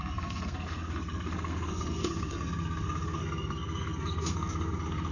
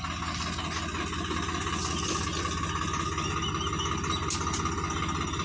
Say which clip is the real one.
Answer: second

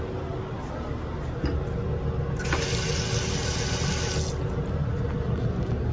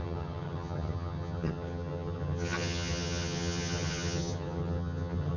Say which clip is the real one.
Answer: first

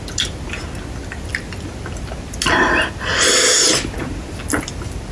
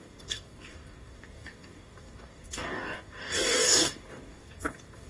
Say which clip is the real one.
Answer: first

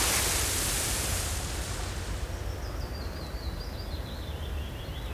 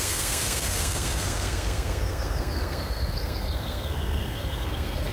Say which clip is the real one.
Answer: first